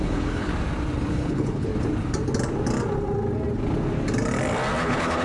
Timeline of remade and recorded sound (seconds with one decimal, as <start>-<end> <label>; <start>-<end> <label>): 0.0-0.5 remade; 0.5-1.1 recorded; 1.1-1.7 remade; 1.7-4.8 recorded; 4.8-5.2 remade